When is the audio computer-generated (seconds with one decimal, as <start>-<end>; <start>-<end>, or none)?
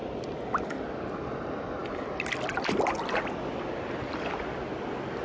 none